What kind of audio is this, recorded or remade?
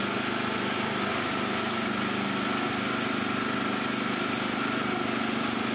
recorded